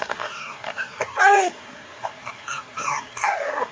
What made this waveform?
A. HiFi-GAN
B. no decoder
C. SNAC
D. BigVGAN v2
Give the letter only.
C